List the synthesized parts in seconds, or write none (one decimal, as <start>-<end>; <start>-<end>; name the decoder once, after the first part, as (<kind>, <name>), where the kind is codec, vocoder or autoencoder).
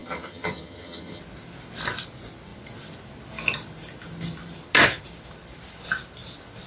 0.0-1.2 (vocoder, HiFi-GAN)